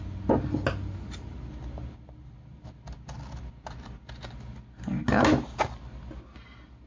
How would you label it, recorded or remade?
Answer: recorded